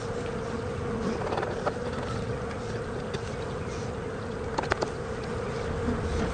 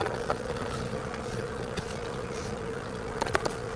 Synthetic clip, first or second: second